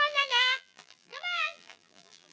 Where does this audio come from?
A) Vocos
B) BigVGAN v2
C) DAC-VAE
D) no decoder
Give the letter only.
B